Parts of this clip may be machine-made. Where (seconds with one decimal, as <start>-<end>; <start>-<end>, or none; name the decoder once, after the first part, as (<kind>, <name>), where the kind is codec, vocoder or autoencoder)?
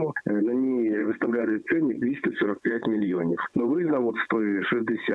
1.0-4.1 (vocoder, WaveNeXt)